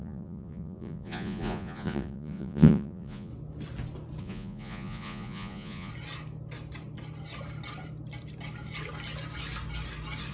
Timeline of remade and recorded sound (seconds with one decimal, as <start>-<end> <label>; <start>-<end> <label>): 0.0-3.3 remade; 3.3-4.2 recorded; 4.2-5.9 remade; 5.9-10.3 recorded